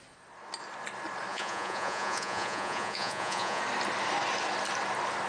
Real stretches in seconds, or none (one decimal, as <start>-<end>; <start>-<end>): 0.0-1.3; 3.6-5.3